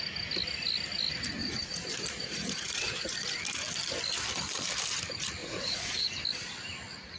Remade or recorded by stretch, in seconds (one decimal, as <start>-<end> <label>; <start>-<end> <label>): 0.0-1.4 recorded; 1.4-3.4 remade; 3.4-5.4 recorded; 5.4-6.2 remade; 6.2-7.2 recorded